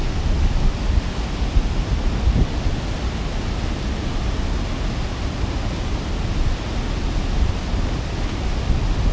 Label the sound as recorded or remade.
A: recorded